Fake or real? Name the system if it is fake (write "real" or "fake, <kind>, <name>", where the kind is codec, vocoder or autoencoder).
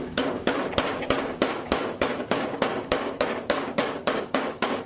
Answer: fake, codec, DAC